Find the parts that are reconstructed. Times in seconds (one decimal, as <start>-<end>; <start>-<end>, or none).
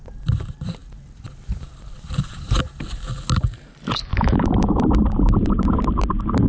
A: 4.1-4.8